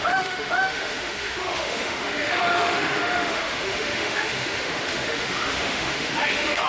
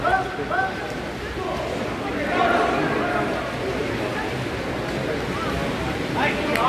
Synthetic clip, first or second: first